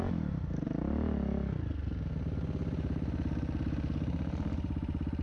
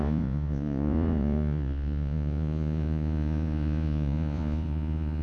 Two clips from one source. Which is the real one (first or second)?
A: first